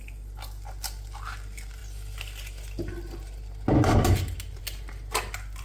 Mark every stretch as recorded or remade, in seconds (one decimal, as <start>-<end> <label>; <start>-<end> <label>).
0.0-5.6 recorded